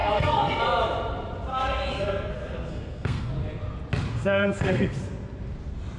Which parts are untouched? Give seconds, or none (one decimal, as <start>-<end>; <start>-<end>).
0.6-1.5; 3.3-4.1; 5.0-6.0